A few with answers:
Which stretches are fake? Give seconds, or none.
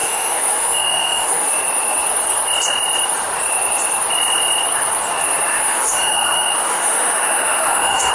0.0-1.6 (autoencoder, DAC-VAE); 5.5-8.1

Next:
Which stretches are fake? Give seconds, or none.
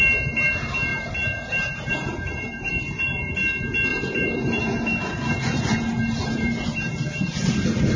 0.9-2.7 (vocoder, BigVGAN v2); 3.9-4.6; 6.2-7.5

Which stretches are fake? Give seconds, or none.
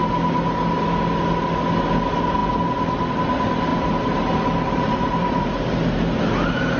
3.7-5.6 (vocoder, BigVGAN v2)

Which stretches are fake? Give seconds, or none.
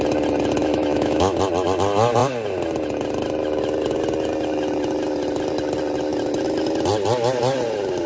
0.6-1.4 (autoencoder, DAC-VAE)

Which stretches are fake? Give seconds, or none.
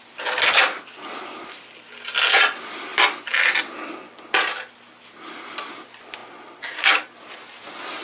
none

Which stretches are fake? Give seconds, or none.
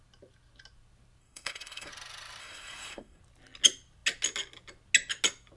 1.2-1.9 (codec, SNAC); 2.4-3.2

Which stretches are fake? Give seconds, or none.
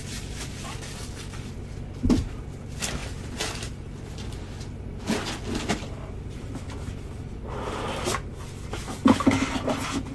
none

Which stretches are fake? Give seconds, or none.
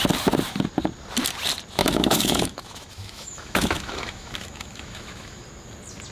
1.8-5.4 (autoencoder, DAC-VAE)